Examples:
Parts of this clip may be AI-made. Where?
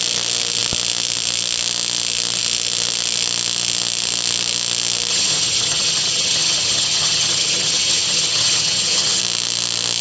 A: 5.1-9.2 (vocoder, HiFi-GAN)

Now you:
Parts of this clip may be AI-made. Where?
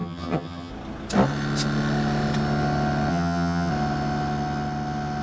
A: 0.0-0.7 (vocoder, HiFi-GAN); 3.1-3.7